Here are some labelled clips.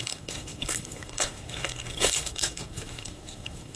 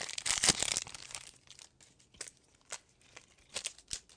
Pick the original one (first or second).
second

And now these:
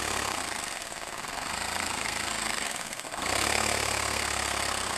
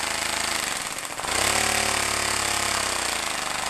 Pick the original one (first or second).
second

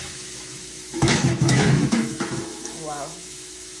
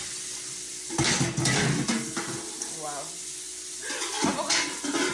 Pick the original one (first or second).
second